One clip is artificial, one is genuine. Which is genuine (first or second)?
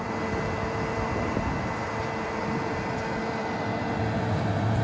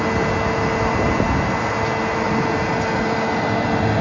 second